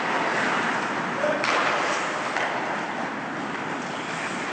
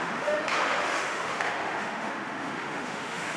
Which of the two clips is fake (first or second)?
second